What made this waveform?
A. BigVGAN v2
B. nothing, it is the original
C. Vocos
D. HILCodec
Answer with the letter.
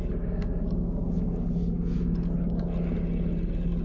B